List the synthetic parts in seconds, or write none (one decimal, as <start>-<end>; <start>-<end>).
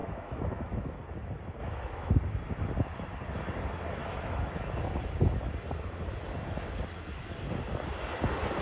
0.0-1.0; 1.6-2.1; 4.0-4.8